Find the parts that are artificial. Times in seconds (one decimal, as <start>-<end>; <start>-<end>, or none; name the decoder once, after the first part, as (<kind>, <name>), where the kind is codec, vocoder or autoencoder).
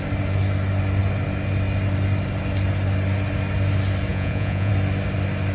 4.1-4.7 (vocoder, Vocos)